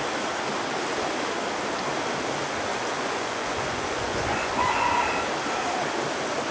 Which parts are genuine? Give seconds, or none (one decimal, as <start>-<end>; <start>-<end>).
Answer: 0.0-2.7; 5.0-6.5